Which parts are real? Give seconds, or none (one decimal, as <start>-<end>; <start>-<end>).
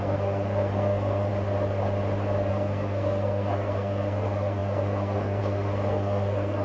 1.3-2.5